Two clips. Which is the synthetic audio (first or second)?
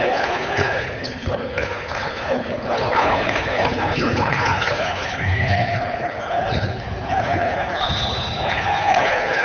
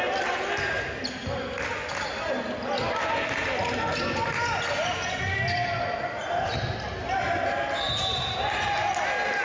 first